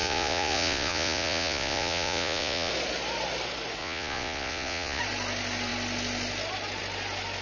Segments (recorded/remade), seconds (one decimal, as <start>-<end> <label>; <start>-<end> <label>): 0.0-2.7 remade; 2.7-3.8 recorded; 3.8-5.0 remade; 5.0-7.4 recorded